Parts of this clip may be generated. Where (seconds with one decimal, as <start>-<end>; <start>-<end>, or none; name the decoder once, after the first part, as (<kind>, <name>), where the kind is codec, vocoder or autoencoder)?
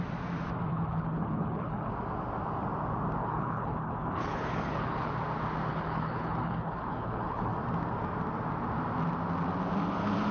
0.7-1.9 (codec, HILCodec); 3.2-5.1; 5.7-7.5